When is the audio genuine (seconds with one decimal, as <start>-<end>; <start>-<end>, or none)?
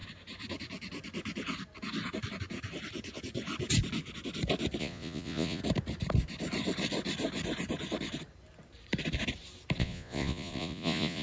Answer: 0.0-4.8; 5.6-9.8